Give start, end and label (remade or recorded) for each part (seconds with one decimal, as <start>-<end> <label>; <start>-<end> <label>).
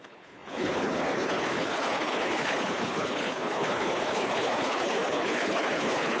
0.0-6.2 remade